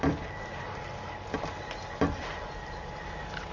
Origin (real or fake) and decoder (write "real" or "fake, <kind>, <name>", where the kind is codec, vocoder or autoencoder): real